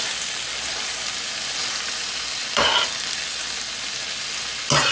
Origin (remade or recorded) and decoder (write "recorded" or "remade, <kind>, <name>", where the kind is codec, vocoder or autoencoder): recorded